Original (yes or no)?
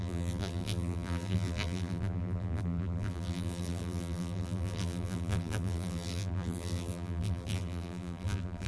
no